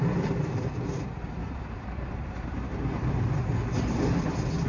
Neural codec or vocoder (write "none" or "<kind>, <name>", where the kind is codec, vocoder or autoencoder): none